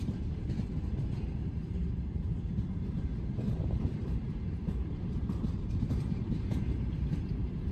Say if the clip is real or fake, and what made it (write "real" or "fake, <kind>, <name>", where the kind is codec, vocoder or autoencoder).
fake, vocoder, BigVGAN v2